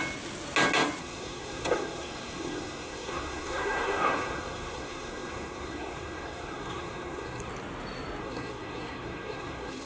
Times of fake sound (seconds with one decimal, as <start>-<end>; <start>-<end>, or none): 1.0-7.5; 8.2-9.9